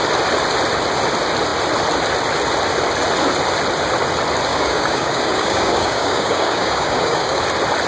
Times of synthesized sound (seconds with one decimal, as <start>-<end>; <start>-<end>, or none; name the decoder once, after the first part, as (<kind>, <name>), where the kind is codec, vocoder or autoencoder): 4.5-7.4 (codec, DAC)